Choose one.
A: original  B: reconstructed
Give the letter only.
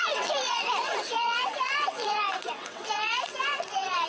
B